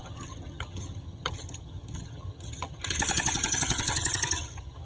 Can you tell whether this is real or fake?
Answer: fake